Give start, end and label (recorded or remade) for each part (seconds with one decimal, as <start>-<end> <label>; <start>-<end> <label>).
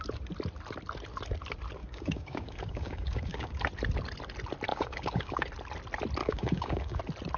0.0-1.8 recorded; 1.8-3.6 remade; 3.6-4.7 recorded; 4.7-5.5 remade; 5.5-6.2 recorded; 6.2-7.0 remade; 7.0-7.4 recorded